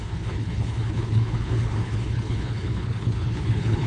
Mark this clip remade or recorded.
remade